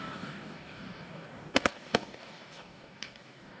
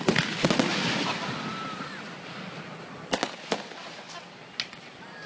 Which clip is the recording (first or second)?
second